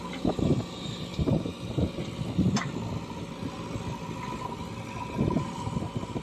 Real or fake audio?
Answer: real